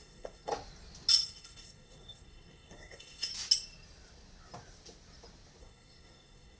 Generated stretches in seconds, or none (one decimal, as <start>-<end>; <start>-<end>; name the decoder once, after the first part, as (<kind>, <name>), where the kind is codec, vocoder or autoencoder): 0.0-0.5 (codec, SNAC); 1.1-3.3; 5.6-6.6

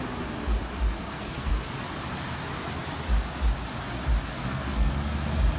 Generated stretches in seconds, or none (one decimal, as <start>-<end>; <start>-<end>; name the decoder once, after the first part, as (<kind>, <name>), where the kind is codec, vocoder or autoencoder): 1.0-1.5 (codec, SNAC); 4.4-4.9

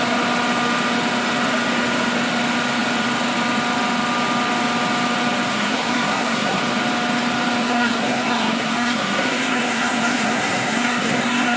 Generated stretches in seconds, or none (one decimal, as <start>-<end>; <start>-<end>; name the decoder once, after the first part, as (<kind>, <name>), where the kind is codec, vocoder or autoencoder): 5.5-6.6 (codec, SNAC); 7.6-11.6

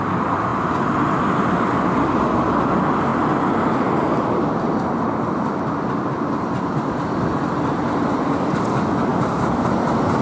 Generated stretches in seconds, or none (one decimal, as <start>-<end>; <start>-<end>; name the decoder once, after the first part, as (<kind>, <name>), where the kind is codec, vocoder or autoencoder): none